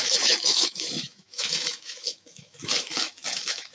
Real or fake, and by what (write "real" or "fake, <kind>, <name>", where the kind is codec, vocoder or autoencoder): fake, autoencoder, DAC-VAE